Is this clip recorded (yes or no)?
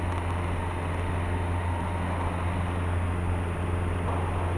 yes